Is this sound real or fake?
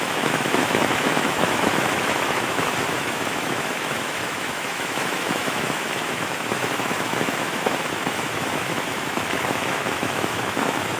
fake